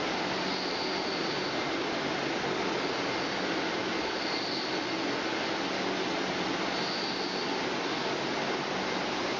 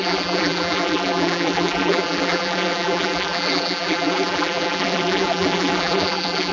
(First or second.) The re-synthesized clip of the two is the second